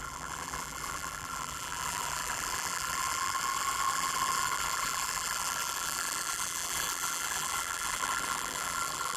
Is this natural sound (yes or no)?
no